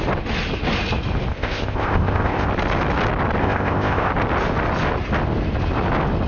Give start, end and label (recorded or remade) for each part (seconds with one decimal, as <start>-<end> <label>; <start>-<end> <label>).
0.0-1.3 recorded; 1.3-2.5 remade; 2.5-3.4 recorded; 3.4-4.1 remade; 4.1-6.3 recorded